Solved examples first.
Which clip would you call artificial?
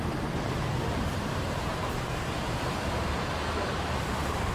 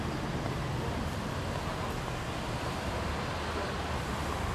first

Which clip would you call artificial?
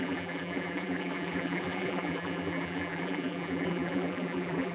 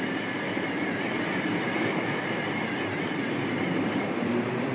first